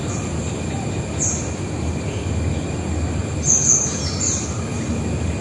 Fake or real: real